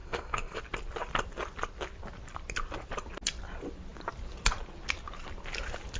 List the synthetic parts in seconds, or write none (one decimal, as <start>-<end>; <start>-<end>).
0.0-0.6